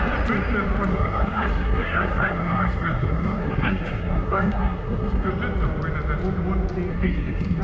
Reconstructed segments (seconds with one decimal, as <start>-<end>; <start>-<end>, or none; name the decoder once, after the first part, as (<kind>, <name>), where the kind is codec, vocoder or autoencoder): 0.9-5.3 (codec, SNAC); 6.9-7.6